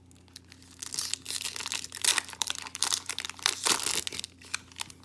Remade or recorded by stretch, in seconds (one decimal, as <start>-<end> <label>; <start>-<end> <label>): 0.0-2.1 recorded; 2.1-3.8 remade; 3.8-5.0 recorded